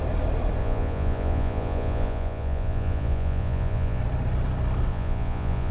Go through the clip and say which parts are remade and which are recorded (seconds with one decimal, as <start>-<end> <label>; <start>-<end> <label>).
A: 0.0-0.6 recorded; 0.6-4.0 remade; 4.0-4.9 recorded; 4.9-5.7 remade